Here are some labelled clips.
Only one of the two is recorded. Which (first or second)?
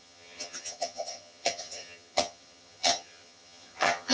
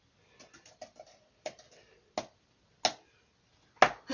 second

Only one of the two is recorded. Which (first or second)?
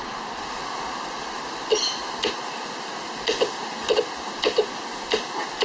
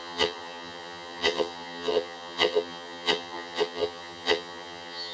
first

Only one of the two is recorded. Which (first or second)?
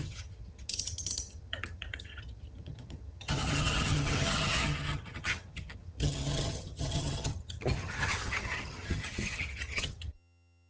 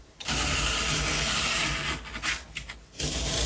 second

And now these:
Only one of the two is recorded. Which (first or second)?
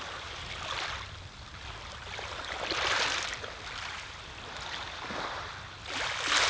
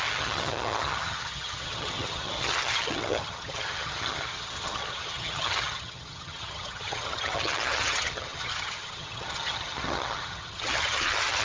first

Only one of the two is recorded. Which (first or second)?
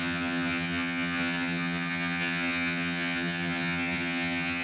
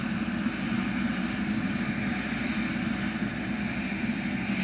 second